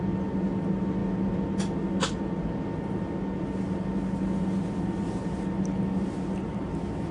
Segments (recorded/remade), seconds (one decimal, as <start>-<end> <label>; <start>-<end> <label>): 0.0-7.1 recorded